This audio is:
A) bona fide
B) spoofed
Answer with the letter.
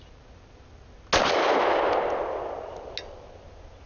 A